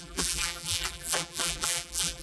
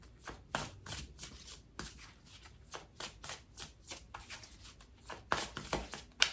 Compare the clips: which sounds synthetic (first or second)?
first